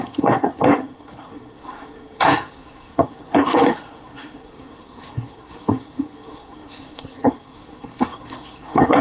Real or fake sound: fake